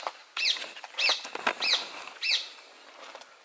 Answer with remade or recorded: recorded